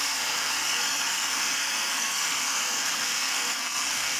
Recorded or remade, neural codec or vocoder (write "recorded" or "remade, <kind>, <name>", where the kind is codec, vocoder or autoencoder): remade, codec, SNAC